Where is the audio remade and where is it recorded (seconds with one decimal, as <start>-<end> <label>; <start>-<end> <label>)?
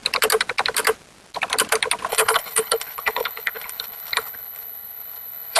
0.0-2.1 recorded; 2.1-5.6 remade